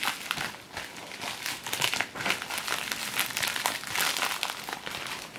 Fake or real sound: real